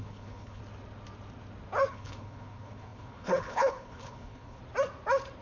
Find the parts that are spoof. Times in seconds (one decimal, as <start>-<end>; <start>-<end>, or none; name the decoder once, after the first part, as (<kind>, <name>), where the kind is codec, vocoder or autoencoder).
0.0-0.6 (codec, HILCodec); 1.9-4.6